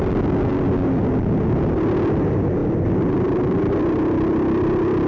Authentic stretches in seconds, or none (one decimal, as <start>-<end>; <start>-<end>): 0.0-5.1